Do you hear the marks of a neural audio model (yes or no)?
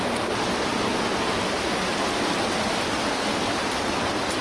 no